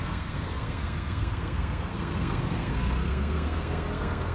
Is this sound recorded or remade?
remade